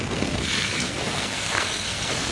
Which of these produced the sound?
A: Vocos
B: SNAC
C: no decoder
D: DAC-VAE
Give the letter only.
B